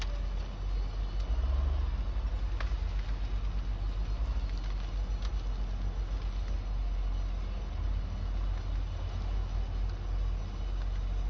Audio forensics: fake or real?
real